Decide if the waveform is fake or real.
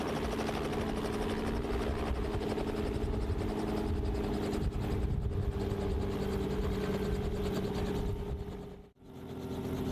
real